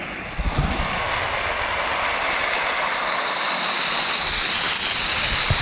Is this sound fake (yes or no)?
no